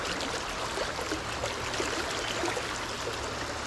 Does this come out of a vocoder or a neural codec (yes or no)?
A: no